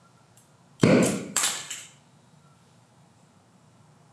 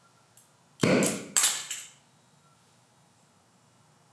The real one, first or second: second